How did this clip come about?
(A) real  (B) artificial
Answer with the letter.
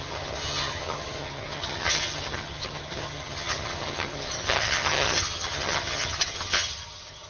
B